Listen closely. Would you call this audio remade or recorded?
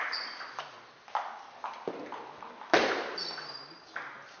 recorded